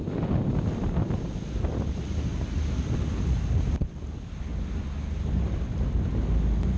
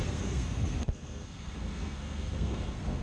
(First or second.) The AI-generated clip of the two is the second